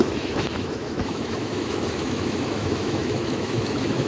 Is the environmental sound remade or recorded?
remade